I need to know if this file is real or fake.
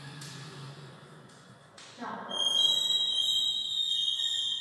fake